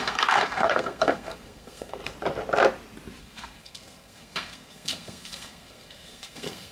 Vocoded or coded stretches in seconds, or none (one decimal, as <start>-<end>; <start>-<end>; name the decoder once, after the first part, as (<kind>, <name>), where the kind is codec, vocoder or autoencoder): 0.0-2.0 (codec, SNAC); 3.2-6.7